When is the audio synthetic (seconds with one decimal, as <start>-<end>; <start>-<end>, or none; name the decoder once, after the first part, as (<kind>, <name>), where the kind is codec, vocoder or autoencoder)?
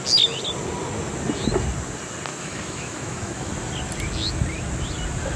2.3-3.5 (autoencoder, DAC-VAE)